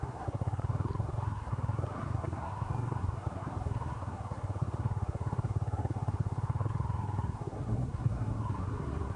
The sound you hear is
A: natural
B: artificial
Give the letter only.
B